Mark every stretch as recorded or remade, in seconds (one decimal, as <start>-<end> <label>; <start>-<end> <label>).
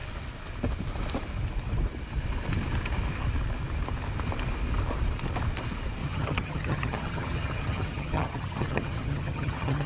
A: 0.0-6.0 recorded; 6.0-9.9 remade